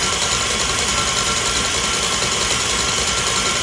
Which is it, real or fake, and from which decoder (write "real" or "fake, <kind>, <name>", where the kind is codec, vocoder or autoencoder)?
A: fake, vocoder, BigVGAN v2